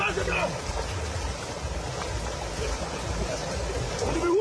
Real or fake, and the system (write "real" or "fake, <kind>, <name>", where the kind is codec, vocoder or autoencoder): real